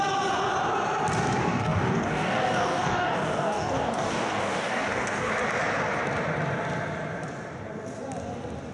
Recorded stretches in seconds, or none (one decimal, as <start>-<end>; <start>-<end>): 0.0-1.4; 5.3-8.7